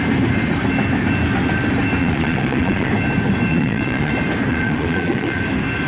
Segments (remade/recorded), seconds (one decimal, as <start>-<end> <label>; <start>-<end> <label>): 0.0-2.0 recorded; 2.0-2.9 remade; 2.9-3.5 recorded; 3.5-4.1 remade; 4.1-4.5 recorded; 4.5-5.4 remade; 5.4-5.9 recorded